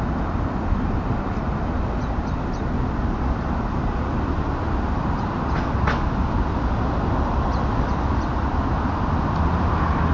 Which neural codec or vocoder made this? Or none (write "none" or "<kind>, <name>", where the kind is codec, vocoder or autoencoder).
none